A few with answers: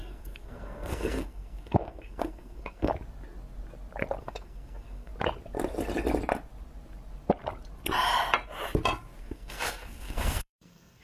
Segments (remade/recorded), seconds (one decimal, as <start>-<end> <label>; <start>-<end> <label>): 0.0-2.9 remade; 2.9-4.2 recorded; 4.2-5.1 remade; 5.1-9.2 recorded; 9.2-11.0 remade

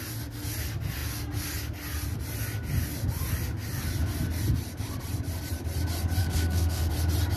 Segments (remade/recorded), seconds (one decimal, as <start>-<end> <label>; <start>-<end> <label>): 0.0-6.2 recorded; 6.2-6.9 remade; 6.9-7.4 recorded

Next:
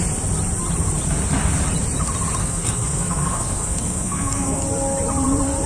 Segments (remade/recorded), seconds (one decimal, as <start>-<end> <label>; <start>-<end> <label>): 0.0-2.4 recorded; 2.4-4.6 remade; 4.6-5.7 recorded

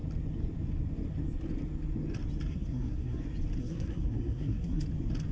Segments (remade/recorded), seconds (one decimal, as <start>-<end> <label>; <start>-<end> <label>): 0.0-2.5 recorded; 2.5-3.2 remade; 3.2-3.6 recorded; 3.6-4.8 remade; 4.8-5.3 recorded

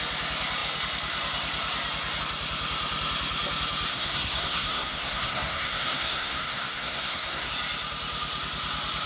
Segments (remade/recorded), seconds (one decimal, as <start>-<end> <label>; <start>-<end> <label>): 0.0-3.9 recorded; 3.9-7.5 remade; 7.5-9.1 recorded

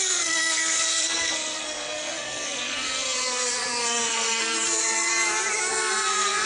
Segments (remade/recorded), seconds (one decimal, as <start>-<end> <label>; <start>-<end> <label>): 0.0-5.1 remade; 5.1-5.7 recorded; 5.7-6.5 remade